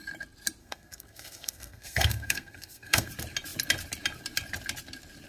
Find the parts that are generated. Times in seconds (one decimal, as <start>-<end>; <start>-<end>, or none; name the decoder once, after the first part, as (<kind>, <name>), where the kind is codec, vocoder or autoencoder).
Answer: 0.6-3.1 (codec, SNAC)